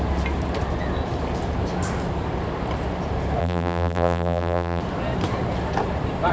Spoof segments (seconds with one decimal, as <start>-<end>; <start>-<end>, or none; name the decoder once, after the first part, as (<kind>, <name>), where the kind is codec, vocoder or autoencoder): 3.4-4.8 (vocoder, BigVGAN v2)